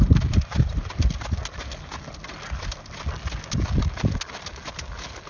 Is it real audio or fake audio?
real